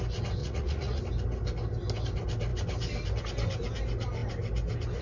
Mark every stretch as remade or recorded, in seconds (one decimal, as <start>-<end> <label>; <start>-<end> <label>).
0.0-0.4 recorded; 0.4-1.0 remade; 1.0-5.0 recorded